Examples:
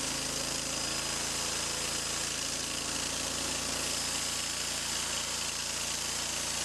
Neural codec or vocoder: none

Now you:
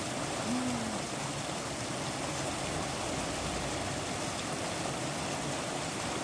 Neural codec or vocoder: none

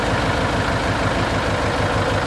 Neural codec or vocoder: none